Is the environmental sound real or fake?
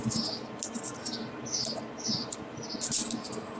real